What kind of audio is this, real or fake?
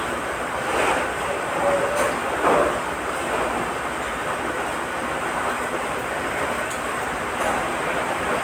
real